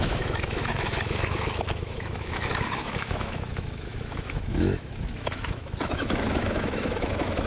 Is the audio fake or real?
fake